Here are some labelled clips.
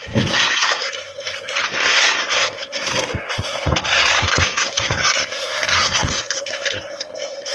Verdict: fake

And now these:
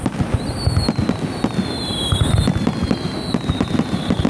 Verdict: real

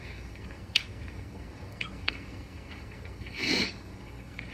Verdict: fake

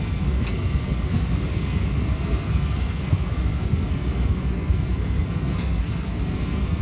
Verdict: fake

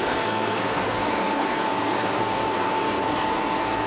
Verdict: fake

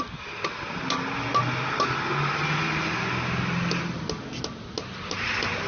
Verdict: real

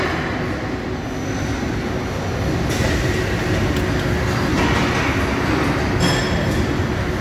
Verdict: real